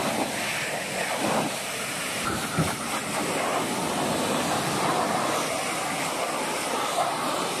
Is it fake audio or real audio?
real